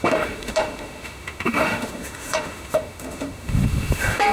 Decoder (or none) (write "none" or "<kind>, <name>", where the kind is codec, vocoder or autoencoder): autoencoder, DAC-VAE